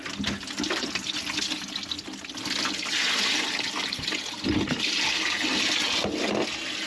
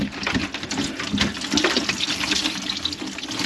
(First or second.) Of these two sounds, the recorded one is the first